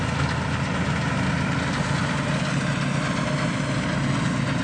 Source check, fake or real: real